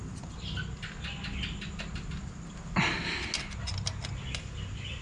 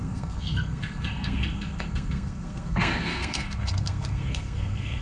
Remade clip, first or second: second